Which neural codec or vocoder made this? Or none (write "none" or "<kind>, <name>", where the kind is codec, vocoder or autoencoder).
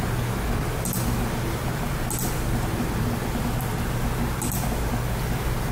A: none